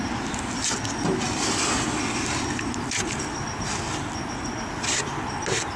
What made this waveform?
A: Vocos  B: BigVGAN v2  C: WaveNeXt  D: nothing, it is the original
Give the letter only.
D